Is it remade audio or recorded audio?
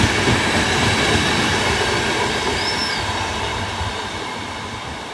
recorded